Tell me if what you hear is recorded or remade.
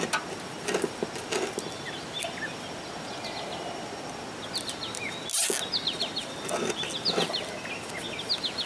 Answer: recorded